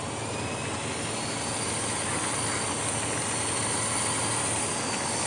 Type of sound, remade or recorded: recorded